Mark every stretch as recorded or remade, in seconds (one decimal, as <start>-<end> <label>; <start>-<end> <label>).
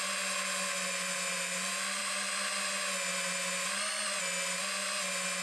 0.0-5.4 recorded